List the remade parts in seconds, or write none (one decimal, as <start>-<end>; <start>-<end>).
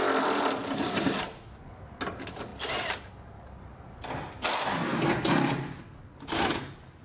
0.6-1.4; 4.9-6.0